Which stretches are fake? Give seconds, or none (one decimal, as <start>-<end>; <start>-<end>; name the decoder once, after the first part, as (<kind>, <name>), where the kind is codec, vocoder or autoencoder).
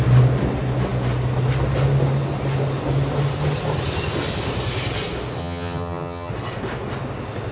5.4-6.3 (vocoder, HiFi-GAN)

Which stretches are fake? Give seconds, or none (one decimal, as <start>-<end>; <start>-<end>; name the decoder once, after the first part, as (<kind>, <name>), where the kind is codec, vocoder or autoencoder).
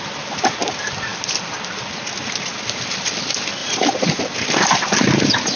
3.6-4.2 (vocoder, Vocos)